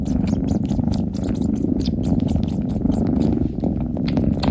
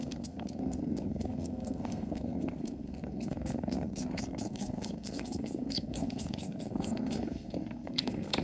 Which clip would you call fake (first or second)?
second